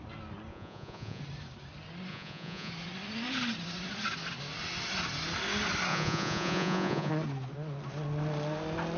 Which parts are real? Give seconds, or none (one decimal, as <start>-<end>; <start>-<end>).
0.0-0.5; 1.2-2.1; 2.7-5.9; 7.1-9.0